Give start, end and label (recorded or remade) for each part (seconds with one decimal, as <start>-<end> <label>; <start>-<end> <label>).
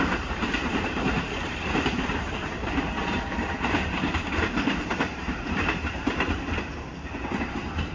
0.0-6.9 remade; 6.9-7.9 recorded